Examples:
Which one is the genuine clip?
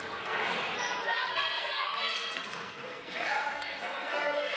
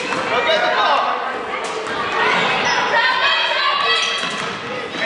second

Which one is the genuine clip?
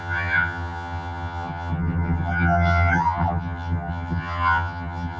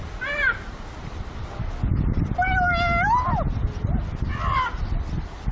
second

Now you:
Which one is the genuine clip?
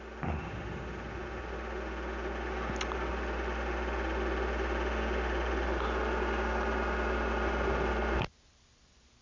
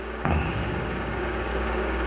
first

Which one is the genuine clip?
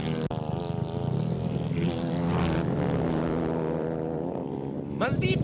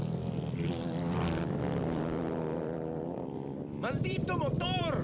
first